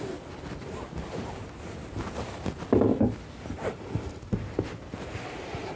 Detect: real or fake real